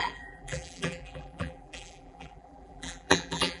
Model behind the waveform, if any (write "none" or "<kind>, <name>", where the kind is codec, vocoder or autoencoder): vocoder, BigVGAN v2